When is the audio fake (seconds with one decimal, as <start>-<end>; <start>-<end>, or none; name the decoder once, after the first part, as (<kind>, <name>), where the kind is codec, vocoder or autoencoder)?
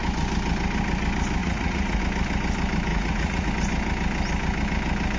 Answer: 1.4-2.0 (vocoder, Vocos); 2.9-3.5